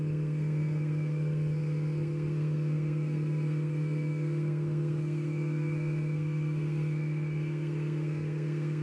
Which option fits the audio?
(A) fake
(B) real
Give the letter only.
A